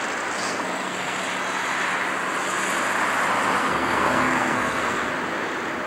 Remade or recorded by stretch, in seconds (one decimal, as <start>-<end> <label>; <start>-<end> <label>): 0.0-0.4 recorded; 0.4-1.2 remade; 1.2-3.6 recorded; 3.6-5.1 remade; 5.1-5.9 recorded